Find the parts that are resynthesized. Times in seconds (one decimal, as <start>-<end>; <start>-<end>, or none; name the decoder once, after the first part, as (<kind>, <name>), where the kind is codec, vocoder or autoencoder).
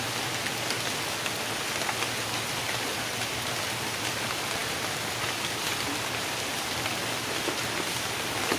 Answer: none